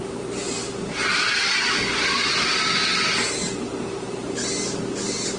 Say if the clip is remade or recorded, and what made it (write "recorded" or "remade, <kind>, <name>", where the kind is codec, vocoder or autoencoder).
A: recorded